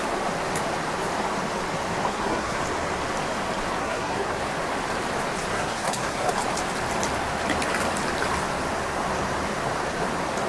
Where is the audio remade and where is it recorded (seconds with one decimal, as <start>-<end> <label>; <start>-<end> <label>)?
0.0-2.1 recorded; 2.1-2.6 remade; 2.6-3.8 recorded; 3.8-4.4 remade; 4.4-5.5 recorded; 5.5-6.3 remade; 6.3-10.5 recorded